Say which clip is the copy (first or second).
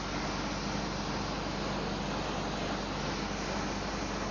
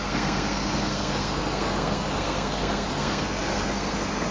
second